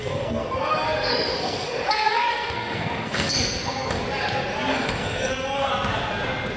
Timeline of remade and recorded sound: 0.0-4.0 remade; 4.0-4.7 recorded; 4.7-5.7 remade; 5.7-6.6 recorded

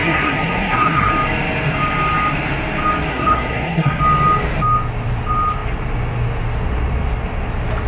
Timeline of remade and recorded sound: 0.0-1.1 remade; 1.1-3.1 recorded; 3.1-4.0 remade; 4.0-7.9 recorded

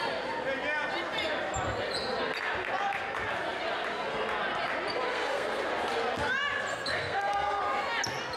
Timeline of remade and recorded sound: 0.0-5.1 recorded; 5.1-5.6 remade; 5.6-6.7 recorded; 6.7-7.6 remade; 7.6-8.4 recorded